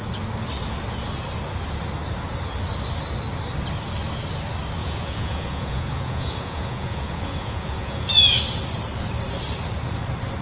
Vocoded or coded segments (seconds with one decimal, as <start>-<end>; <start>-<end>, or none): 4.8-8.1